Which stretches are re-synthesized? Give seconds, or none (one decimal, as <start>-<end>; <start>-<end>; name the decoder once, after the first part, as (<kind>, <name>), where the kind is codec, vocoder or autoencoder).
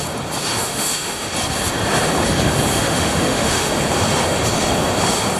0.5-1.3 (autoencoder, DAC-VAE); 2.7-3.7